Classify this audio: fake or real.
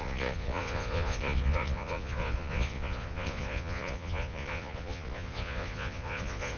fake